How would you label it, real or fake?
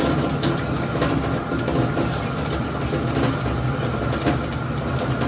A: real